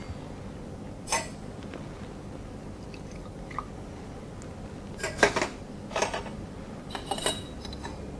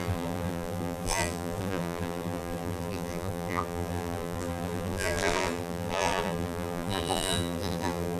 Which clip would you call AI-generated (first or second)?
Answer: second